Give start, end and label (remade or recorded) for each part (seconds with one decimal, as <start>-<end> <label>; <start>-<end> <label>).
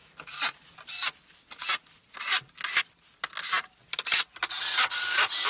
0.0-5.5 recorded